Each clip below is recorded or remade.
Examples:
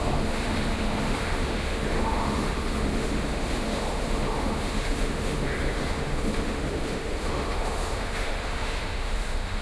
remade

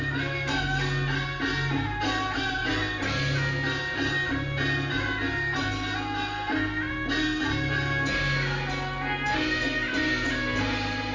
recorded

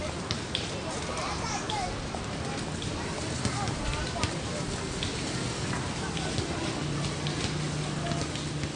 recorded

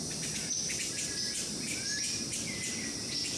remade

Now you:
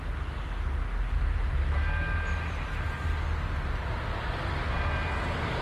recorded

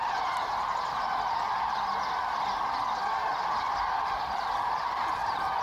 recorded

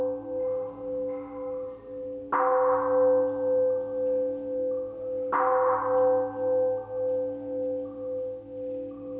recorded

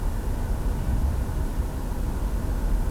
recorded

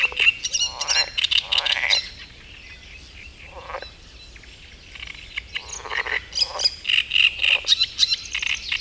recorded